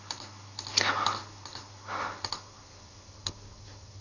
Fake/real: real